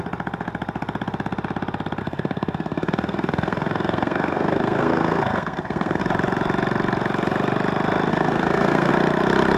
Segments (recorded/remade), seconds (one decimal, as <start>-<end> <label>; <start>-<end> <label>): 0.0-2.0 recorded; 2.0-6.0 remade; 6.0-8.1 recorded; 8.1-8.9 remade; 8.9-9.6 recorded